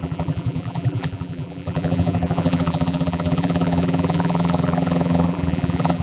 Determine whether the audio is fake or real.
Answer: fake